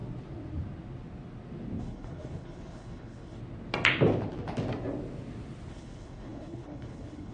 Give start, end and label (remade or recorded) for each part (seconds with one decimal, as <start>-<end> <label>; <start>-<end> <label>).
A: 0.0-1.8 recorded; 1.8-3.4 remade; 3.4-5.7 recorded; 5.7-7.3 remade